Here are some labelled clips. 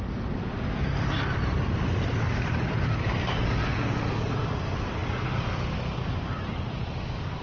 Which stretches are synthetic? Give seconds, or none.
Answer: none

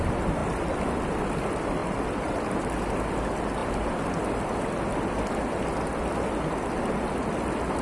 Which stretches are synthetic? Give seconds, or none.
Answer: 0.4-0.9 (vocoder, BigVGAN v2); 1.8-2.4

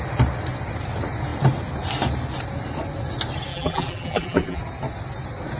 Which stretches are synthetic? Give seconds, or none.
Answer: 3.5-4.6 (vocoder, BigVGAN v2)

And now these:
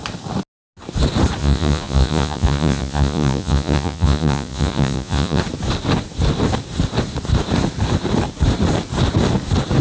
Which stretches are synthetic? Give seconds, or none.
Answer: 1.4-5.4 (vocoder, Vocos)

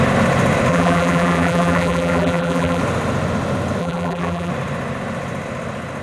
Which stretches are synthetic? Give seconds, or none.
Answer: 0.7-2.8 (vocoder, BigVGAN v2); 3.8-4.5

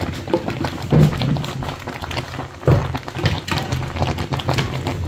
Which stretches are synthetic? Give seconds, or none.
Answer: 2.8-4.4 (vocoder, BigVGAN v2)

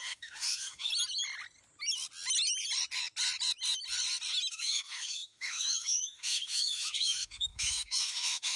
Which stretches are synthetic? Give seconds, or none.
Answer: 0.0-0.9 (autoencoder, DAC-VAE); 4.5-8.6